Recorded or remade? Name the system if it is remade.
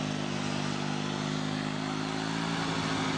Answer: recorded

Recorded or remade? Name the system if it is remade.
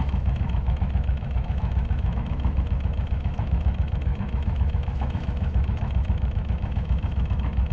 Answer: remade, autoencoder, DAC-VAE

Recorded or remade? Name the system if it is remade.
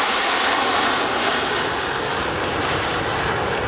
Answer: recorded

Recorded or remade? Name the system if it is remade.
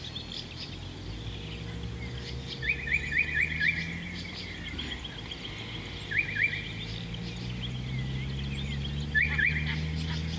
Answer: recorded